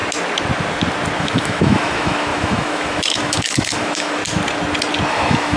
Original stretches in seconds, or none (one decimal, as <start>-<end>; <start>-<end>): 0.0-1.2; 4.2-5.1

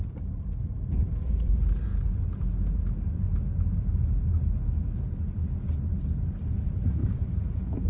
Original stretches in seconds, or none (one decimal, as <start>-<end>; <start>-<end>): 1.9-6.3

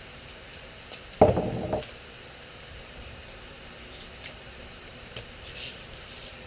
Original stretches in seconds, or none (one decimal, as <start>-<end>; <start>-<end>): 0.5-2.8